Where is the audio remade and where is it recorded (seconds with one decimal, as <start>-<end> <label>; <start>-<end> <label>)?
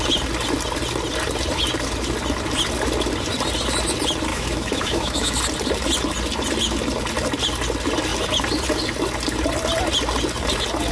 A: 0.0-4.3 recorded; 4.3-5.4 remade; 5.4-10.9 recorded